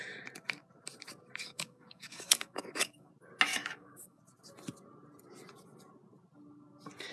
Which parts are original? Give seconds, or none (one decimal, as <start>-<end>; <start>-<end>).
0.0-1.4; 3.1-3.5; 4.2-7.1